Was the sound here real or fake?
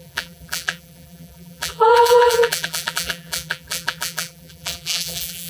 fake